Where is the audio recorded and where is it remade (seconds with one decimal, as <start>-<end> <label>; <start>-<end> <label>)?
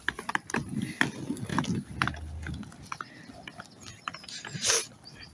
0.0-5.3 recorded